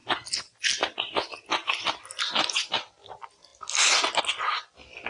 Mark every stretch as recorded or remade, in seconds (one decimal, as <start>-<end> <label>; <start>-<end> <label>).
0.0-5.1 recorded